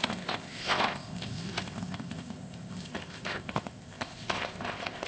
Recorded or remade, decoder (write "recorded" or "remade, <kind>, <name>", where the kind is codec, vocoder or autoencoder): remade, codec, ZipCodec